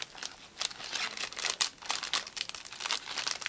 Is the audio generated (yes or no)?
no